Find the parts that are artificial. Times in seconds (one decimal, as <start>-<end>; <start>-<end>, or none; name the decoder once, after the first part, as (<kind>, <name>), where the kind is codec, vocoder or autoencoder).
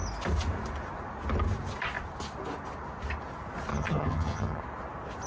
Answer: 3.7-4.6 (vocoder, HiFi-GAN)